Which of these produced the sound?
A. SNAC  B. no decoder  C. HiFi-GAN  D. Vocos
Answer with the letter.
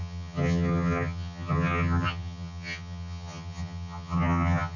C